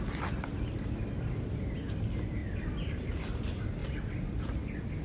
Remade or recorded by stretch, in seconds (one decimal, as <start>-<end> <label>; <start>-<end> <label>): 0.0-2.4 recorded; 2.4-3.0 remade; 3.0-3.8 recorded; 3.8-4.4 remade; 4.4-5.0 recorded